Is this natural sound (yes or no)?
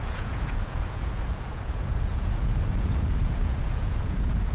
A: no